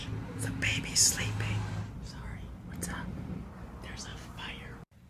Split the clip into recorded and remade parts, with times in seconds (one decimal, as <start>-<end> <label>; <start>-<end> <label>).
0.0-4.1 recorded; 4.1-5.1 remade

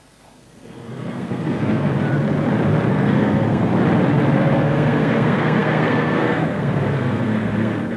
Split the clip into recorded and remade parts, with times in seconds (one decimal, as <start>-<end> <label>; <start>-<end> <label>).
0.0-1.9 remade; 1.9-2.9 recorded; 2.9-3.7 remade; 3.7-4.4 recorded; 4.4-8.0 remade

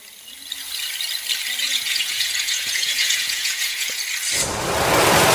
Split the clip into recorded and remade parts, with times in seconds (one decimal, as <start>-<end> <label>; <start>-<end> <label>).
0.0-1.6 recorded; 1.6-4.0 remade; 4.0-5.3 recorded

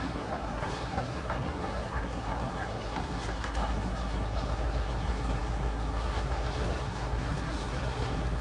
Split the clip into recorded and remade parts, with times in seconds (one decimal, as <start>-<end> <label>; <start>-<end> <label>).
0.0-8.4 remade